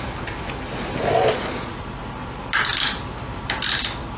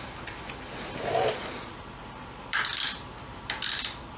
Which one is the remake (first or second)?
second